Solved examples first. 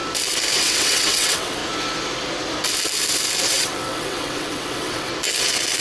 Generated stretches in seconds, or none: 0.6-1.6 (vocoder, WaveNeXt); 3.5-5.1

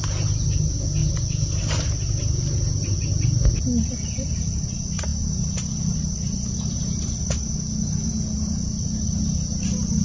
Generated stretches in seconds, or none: none

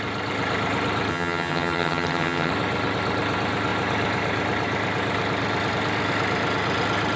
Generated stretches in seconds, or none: 1.1-2.5 (vocoder, HiFi-GAN)

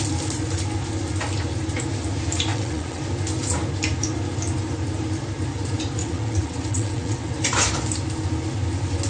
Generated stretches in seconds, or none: 2.5-3.0 (vocoder, WaveNeXt); 6.0-7.3

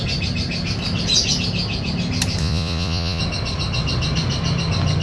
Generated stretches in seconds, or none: 2.4-3.2 (vocoder, Vocos)

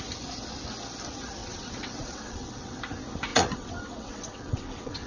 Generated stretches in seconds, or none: 1.4-2.8 (vocoder, WaveNeXt); 3.3-5.1

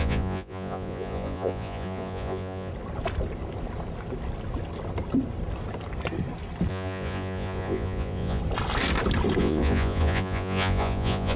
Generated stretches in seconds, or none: 0.0-2.7 (vocoder, Vocos); 6.7-8.4; 9.4-11.4

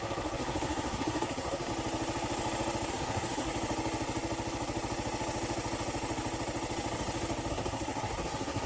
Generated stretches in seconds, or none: 0.0-1.7 (codec, SNAC); 2.9-3.5; 7.5-8.7